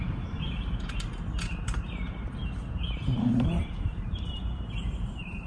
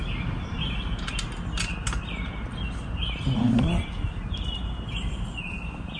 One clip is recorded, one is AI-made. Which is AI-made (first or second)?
first